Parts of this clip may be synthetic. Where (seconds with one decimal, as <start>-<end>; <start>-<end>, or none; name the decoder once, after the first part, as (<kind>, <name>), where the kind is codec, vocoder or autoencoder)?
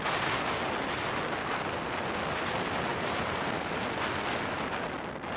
2.9-3.7 (vocoder, BigVGAN v2)